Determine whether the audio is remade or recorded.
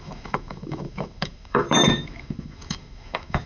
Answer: remade